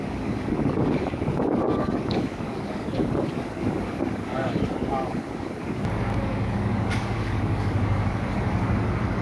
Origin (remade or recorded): remade